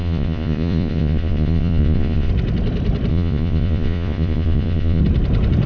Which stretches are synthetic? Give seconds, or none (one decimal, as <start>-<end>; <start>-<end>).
0.0-2.3; 3.1-5.0